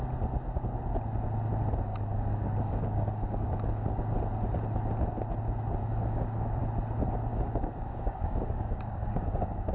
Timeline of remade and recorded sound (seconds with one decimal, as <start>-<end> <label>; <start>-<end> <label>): 0.0-1.9 recorded; 1.9-4.1 remade; 4.1-5.8 recorded; 5.8-6.6 remade; 6.6-7.3 recorded; 7.3-9.7 remade